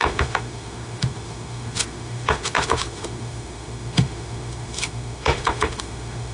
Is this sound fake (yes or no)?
yes